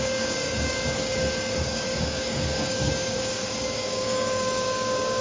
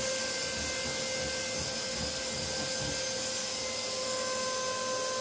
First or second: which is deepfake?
first